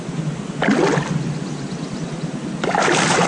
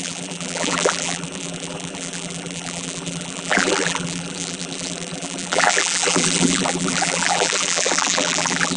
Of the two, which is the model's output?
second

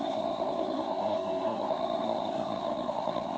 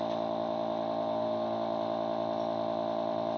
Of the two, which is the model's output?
first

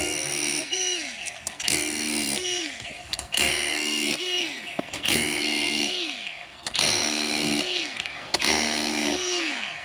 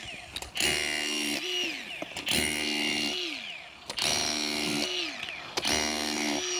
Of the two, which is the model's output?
first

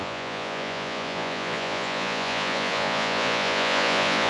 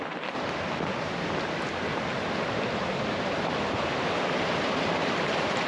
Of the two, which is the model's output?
first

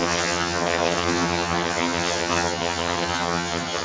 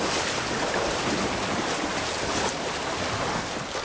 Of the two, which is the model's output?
first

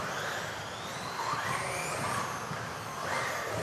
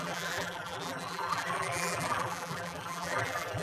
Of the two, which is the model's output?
second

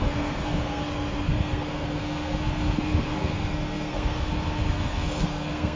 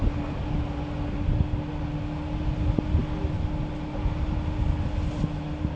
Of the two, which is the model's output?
first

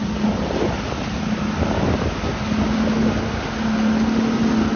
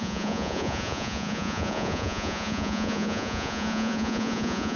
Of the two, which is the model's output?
second